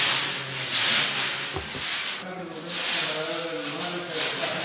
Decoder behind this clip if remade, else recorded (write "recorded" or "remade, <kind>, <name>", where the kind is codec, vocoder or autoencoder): recorded